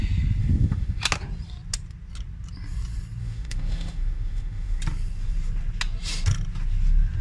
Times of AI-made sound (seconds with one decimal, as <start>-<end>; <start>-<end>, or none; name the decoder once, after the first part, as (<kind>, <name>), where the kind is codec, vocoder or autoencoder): 0.4-1.0 (autoencoder, DAC-VAE); 3.2-4.8